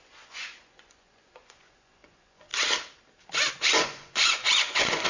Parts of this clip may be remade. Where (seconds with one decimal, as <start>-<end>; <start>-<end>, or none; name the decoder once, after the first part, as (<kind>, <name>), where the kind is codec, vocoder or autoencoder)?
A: 0.0-2.5 (vocoder, Vocos); 3.5-5.1